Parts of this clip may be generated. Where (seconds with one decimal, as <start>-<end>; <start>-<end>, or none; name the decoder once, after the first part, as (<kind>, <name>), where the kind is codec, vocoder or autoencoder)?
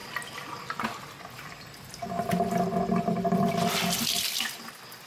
3.0-5.1 (vocoder, BigVGAN v2)